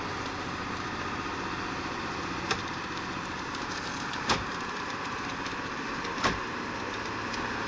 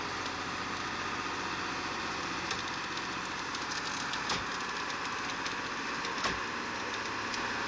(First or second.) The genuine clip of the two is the second